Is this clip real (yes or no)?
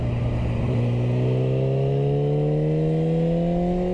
yes